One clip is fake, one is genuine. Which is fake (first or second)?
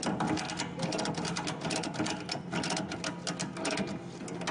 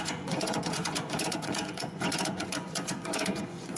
second